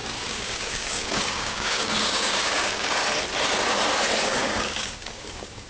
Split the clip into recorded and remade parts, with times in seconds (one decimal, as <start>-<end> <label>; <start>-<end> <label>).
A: 0.0-3.0 remade; 3.0-4.2 recorded; 4.2-5.7 remade